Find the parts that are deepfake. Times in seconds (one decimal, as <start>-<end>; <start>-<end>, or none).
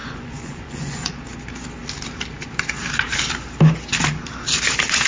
0.0-1.1